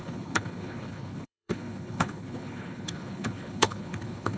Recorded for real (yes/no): no